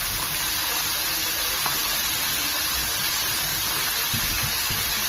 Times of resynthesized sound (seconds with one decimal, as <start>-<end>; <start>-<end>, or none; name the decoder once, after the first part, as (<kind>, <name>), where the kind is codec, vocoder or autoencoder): none

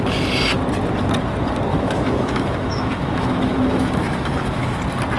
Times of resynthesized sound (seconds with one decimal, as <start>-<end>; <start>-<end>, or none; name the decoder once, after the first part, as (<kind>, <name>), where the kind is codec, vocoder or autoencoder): 1.7-4.8 (autoencoder, DAC-VAE)

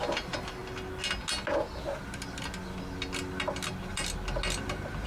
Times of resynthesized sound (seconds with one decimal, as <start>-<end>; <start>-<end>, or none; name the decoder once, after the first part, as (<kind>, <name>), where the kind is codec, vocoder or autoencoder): none

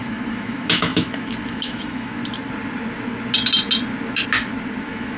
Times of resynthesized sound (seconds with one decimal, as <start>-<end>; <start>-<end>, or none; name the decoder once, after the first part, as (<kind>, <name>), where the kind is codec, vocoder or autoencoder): 0.0-2.2 (autoencoder, DAC-VAE); 4.8-5.2

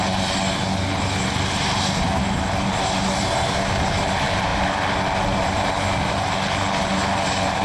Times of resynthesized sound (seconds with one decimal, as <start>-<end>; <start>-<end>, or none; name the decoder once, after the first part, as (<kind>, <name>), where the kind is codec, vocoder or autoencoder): none

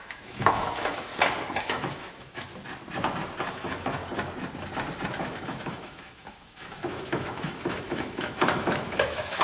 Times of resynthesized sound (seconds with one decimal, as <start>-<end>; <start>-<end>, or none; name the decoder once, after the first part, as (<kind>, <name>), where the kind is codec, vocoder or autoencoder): 0.0-1.1 (autoencoder, DAC-VAE); 1.6-2.5; 3.5-4.0; 5.2-9.4